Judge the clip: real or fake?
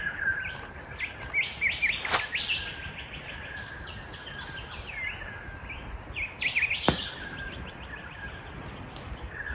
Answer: real